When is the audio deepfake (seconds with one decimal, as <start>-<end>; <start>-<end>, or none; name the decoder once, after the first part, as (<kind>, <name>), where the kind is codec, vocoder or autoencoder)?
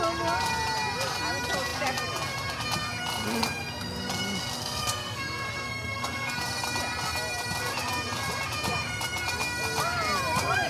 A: 4.6-6.3 (codec, SNAC)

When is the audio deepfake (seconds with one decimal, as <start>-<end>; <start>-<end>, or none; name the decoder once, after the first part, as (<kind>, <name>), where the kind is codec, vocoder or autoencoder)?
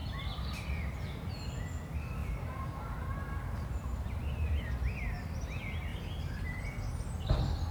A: 0.0-1.6 (vocoder, BigVGAN v2); 2.2-4.7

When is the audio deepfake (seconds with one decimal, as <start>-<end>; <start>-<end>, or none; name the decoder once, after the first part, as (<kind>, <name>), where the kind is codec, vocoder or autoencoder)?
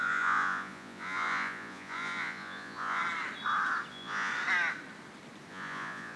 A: 0.0-3.0 (vocoder, Vocos); 3.9-4.3; 5.5-6.2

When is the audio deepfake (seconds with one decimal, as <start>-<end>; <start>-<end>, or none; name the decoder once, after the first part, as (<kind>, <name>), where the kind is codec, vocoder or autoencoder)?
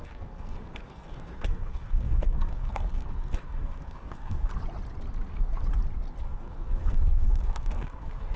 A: 0.0-4.5 (codec, SNAC); 6.2-8.4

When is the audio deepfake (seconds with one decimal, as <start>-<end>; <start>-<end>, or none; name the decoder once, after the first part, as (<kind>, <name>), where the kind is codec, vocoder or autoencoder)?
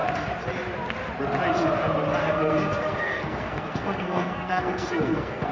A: 2.2-5.5 (codec, SNAC)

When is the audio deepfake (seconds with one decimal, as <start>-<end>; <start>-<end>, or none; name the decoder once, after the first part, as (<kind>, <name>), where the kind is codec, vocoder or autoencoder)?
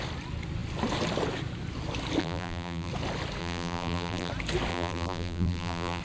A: 2.2-2.9 (vocoder, BigVGAN v2); 3.4-4.3; 4.7-6.0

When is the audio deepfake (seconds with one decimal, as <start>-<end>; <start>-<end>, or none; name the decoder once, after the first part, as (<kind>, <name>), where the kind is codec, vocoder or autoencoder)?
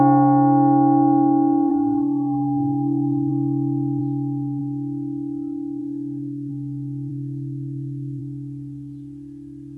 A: 1.7-3.3 (codec, SNAC); 5.8-6.5; 7.1-8.2